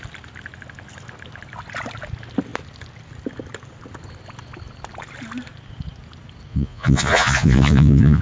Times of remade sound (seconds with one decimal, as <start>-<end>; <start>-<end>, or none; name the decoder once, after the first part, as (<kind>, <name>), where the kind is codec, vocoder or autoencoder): 6.5-8.2 (vocoder, Vocos)